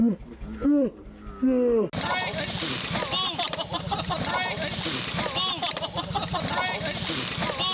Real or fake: real